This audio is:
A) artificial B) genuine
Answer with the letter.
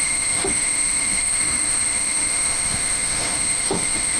A